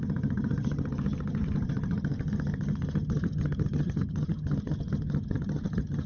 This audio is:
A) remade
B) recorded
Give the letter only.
A